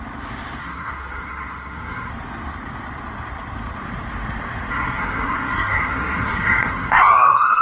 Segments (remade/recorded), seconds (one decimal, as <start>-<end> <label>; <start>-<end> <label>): 0.0-0.6 recorded; 0.6-2.1 remade; 2.1-4.7 recorded; 4.7-7.6 remade